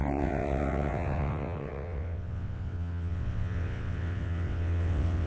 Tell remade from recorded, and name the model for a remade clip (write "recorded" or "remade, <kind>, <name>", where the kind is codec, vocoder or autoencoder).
remade, vocoder, WaveNeXt